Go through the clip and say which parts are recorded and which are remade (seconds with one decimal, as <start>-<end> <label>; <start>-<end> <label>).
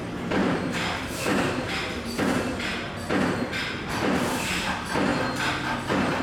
0.0-0.4 recorded; 0.4-2.2 remade; 2.2-6.2 recorded